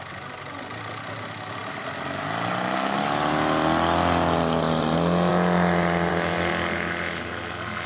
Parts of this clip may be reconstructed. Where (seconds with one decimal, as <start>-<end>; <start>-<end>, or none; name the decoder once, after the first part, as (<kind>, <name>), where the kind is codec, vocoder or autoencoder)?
none